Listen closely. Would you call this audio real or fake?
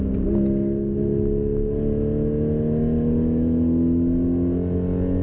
real